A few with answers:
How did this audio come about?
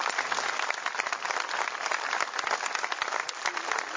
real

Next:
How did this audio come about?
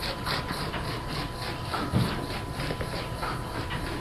fake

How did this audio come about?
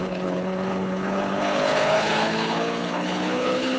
fake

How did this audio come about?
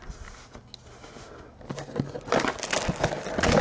real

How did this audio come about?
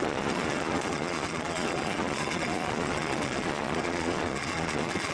fake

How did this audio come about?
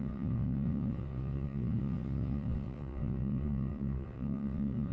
fake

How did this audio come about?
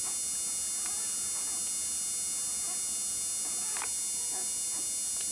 real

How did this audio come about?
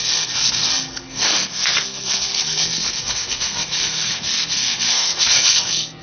fake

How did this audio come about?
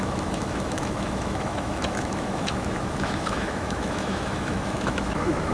fake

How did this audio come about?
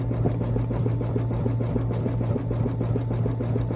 real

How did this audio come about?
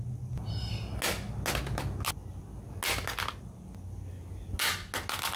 real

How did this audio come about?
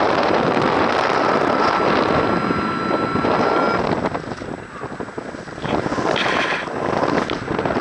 real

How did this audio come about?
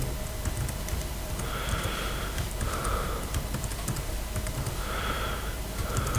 fake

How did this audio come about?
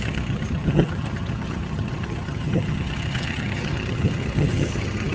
fake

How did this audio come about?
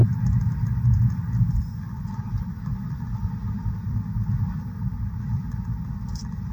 real